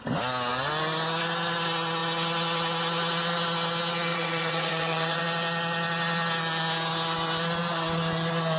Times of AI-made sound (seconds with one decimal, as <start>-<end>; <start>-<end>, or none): 4.1-5.2